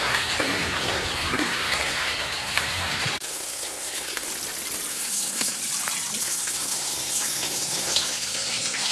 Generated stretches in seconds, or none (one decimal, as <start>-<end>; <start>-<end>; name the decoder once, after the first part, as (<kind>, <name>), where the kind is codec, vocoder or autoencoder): 0.0-4.3 (codec, SNAC); 4.9-5.6; 6.2-8.9